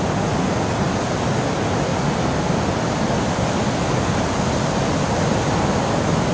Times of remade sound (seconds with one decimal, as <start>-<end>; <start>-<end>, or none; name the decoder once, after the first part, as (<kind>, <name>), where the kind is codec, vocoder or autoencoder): none